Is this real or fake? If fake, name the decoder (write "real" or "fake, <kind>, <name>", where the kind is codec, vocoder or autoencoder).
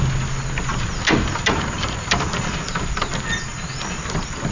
real